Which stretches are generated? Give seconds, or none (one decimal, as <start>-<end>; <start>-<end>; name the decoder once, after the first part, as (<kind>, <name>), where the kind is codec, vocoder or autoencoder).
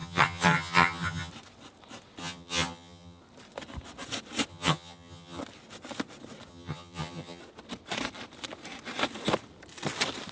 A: 0.0-1.3 (vocoder, HiFi-GAN); 2.2-3.2; 4.5-5.4; 6.5-7.4